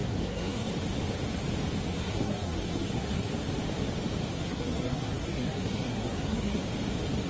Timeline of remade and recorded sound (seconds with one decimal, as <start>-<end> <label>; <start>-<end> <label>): 0.0-0.7 remade; 0.7-1.9 recorded; 1.9-3.3 remade; 3.3-4.3 recorded; 4.3-6.6 remade; 6.6-7.3 recorded